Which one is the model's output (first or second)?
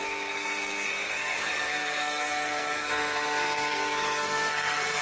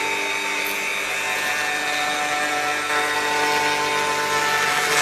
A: first